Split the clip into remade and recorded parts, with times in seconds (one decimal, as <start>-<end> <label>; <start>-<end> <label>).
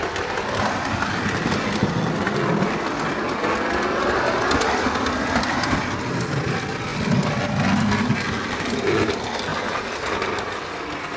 0.0-11.2 recorded